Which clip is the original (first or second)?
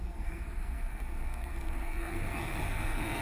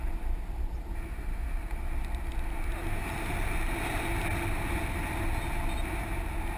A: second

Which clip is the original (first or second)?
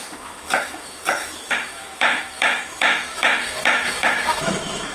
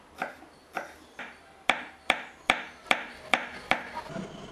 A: second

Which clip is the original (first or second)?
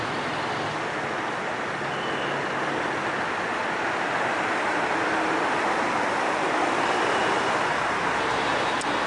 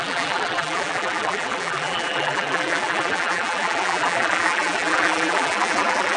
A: first